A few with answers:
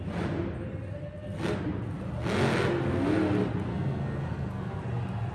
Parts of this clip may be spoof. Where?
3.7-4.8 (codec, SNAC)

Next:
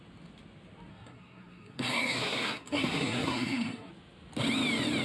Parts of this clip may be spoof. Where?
0.9-3.9 (codec, SNAC)

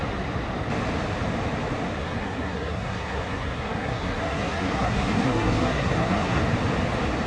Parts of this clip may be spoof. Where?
2.0-6.4 (codec, SNAC)

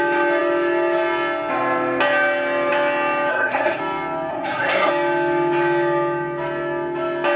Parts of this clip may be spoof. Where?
3.3-3.8 (codec, SNAC); 4.3-4.9

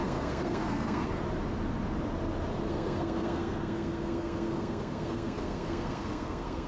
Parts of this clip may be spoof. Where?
0.0-1.2 (codec, SNAC); 2.7-6.7

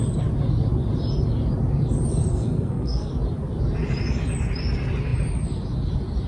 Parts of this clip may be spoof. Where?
2.3-3.1 (codec, SNAC)

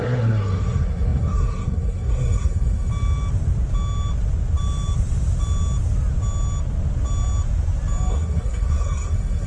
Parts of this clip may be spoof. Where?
0.0-2.9 (codec, SNAC); 8.1-9.5